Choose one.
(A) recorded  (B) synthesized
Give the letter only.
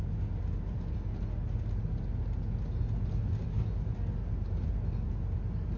A